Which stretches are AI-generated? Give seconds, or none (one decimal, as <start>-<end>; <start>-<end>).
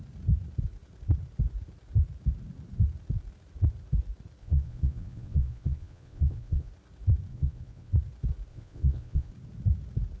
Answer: 4.4-6.7; 7.3-7.9; 8.5-9.3